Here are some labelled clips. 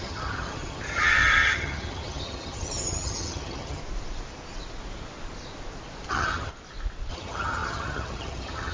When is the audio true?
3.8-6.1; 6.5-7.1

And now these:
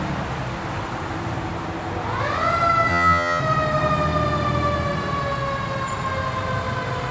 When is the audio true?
0.0-2.9; 3.4-7.1

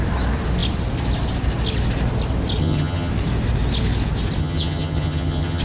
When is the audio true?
0.0-2.6; 3.1-4.4